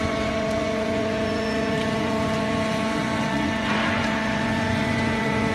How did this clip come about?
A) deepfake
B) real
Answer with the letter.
A